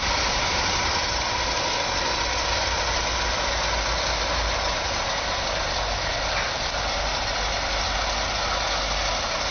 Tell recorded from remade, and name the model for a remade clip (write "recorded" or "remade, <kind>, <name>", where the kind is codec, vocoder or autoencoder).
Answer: recorded